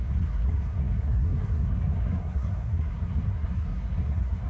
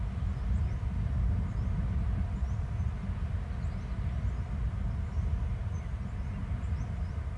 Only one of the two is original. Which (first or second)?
second